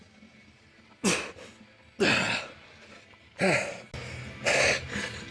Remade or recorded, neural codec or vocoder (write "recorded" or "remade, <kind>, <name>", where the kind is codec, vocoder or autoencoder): recorded